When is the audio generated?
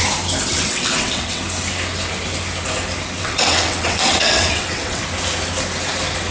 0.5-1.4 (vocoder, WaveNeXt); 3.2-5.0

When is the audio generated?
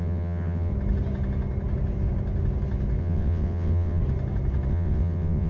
0.0-0.7 (vocoder, WaveNeXt); 3.0-4.0; 4.7-5.5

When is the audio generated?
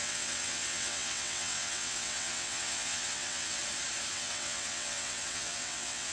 0.0-3.6 (vocoder, WaveNeXt); 4.1-6.1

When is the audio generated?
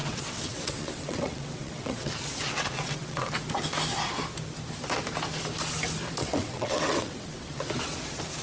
0.0-3.3 (vocoder, WaveNeXt); 6.2-7.7